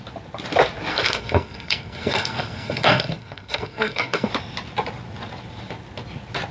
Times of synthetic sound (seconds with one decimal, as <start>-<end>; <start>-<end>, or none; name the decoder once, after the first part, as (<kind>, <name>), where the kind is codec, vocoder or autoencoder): 0.9-4.3 (codec, SNAC)

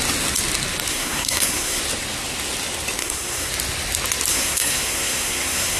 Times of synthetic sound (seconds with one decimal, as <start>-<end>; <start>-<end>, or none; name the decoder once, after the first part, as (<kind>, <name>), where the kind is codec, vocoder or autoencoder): 0.9-1.8 (codec, SNAC); 3.0-3.5; 4.3-5.8